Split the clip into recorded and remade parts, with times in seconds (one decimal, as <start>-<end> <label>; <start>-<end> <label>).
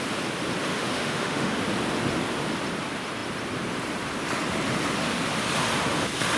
0.0-0.7 recorded; 0.7-1.6 remade; 1.6-6.4 recorded